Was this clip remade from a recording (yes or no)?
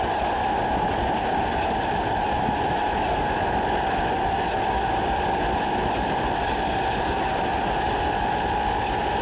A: no